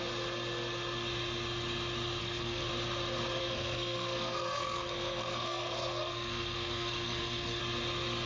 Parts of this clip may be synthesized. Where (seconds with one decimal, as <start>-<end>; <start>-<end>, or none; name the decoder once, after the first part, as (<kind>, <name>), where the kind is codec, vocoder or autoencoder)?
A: 2.2-2.7 (codec, SNAC); 3.4-7.6